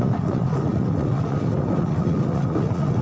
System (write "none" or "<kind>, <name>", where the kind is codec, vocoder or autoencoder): vocoder, Vocos